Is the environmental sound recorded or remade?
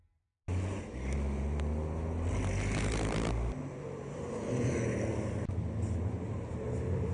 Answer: recorded